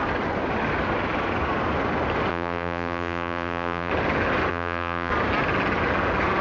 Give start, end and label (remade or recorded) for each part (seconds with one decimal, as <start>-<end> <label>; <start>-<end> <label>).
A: 0.0-2.3 recorded; 2.3-3.9 remade; 3.9-4.5 recorded; 4.5-5.1 remade; 5.1-6.4 recorded